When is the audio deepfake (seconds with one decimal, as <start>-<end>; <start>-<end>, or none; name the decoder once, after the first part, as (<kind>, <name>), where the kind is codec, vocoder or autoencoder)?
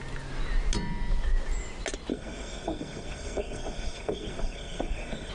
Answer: 2.1-5.3 (codec, SNAC)